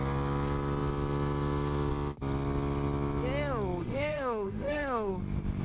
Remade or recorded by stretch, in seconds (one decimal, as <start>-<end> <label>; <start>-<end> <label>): 0.0-3.8 recorded; 3.8-5.1 remade; 5.1-5.6 recorded